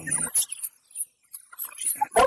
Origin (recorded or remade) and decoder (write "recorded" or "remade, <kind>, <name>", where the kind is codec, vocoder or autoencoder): recorded